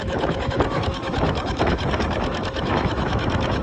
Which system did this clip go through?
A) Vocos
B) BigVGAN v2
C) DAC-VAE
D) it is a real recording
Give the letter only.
C